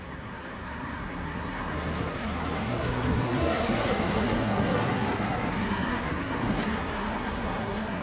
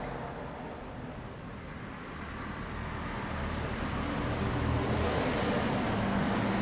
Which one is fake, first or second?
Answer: first